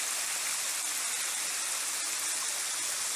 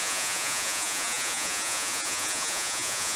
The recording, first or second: first